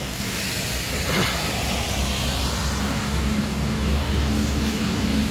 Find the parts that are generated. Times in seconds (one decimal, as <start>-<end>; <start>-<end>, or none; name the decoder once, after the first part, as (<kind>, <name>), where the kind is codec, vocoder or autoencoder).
0.0-0.4 (codec, DAC); 2.8-5.3